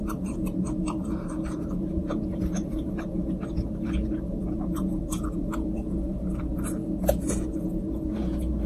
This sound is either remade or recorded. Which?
remade